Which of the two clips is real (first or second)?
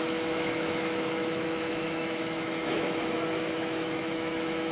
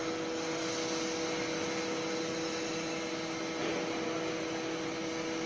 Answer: second